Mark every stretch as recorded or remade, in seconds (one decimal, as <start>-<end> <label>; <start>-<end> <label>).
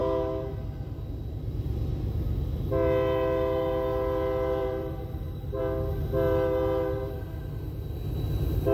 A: 0.0-4.6 recorded; 4.6-5.6 remade; 5.6-8.7 recorded